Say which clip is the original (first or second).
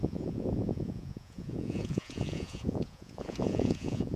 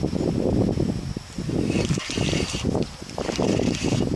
second